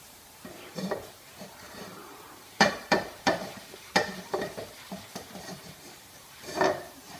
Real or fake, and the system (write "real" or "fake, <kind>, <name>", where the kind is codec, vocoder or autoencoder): fake, vocoder, BigVGAN v2